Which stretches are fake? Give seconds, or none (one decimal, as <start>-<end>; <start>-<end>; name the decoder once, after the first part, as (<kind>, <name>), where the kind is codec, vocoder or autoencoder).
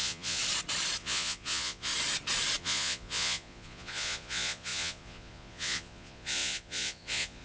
0.0-0.4 (vocoder, Vocos); 1.0-1.9; 2.6-7.4